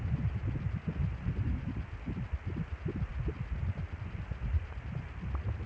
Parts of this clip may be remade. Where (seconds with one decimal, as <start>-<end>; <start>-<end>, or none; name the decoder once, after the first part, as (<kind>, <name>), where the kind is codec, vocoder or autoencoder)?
none